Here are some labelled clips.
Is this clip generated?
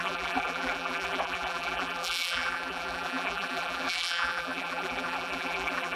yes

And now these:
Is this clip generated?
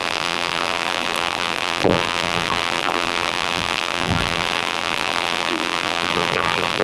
yes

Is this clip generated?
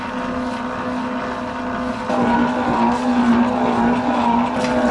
no